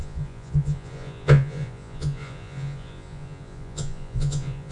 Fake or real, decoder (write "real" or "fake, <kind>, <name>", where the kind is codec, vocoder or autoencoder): fake, vocoder, Vocos